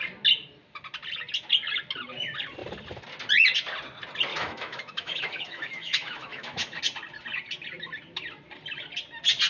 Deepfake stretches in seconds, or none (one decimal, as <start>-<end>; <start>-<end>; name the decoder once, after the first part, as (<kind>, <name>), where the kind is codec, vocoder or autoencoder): 4.3-6.8 (autoencoder, DAC-VAE)